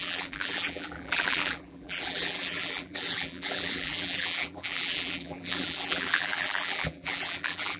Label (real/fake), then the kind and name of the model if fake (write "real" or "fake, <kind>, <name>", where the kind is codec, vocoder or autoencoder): fake, vocoder, BigVGAN v2